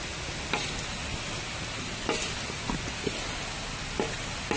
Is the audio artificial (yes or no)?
no